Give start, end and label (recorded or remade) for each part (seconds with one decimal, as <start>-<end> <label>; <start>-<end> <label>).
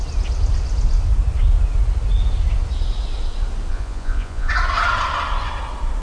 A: 0.0-3.7 recorded; 3.7-4.5 remade; 4.5-6.0 recorded